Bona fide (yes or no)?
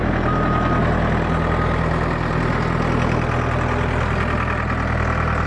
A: yes